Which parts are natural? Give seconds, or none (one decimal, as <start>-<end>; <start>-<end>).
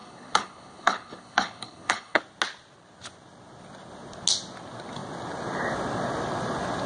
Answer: 2.2-6.9